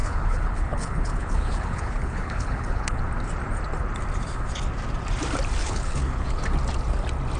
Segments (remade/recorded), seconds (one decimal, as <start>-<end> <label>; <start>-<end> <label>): 0.0-3.0 remade; 3.0-5.6 recorded; 5.6-6.4 remade; 6.4-7.4 recorded

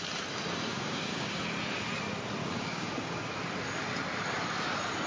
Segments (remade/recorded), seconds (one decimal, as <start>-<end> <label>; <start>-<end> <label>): 0.0-0.7 recorded; 0.7-1.4 remade; 1.4-2.4 recorded; 2.4-3.3 remade; 3.3-5.1 recorded

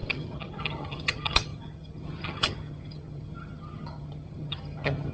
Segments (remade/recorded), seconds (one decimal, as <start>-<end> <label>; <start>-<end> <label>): 0.0-5.1 remade

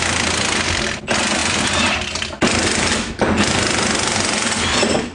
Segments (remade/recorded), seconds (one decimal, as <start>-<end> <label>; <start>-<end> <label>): 0.0-5.1 recorded

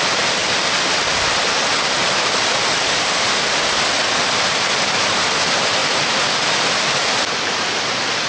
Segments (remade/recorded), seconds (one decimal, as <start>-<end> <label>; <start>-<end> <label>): 0.0-8.3 recorded

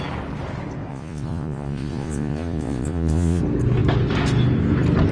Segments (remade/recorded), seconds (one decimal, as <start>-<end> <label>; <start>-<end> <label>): 0.0-0.9 recorded; 0.9-3.4 remade; 3.4-5.1 recorded

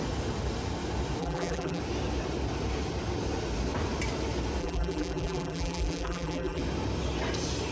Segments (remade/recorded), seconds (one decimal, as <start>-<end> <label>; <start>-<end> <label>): 0.0-1.2 recorded; 1.2-1.8 remade; 1.8-4.6 recorded; 4.6-6.6 remade; 6.6-7.7 recorded

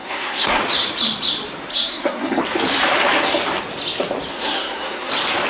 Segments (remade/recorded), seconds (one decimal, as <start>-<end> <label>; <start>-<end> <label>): 0.0-0.6 remade; 0.6-1.7 recorded; 1.7-2.4 remade; 2.4-4.3 recorded; 4.3-5.1 remade; 5.1-5.5 recorded